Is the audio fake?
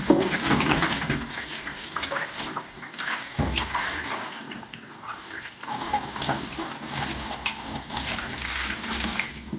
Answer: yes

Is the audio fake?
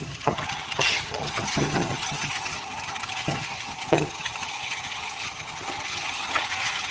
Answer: yes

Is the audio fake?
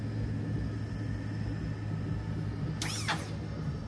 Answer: no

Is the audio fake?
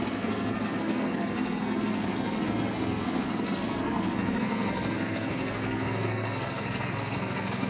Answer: yes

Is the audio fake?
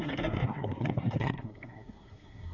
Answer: yes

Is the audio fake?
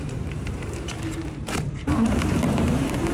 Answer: yes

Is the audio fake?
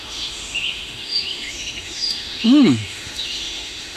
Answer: yes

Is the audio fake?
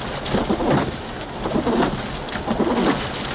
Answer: no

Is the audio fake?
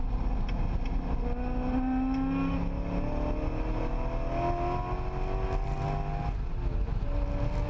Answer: no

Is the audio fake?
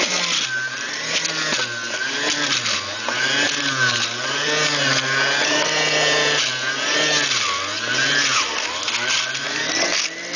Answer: no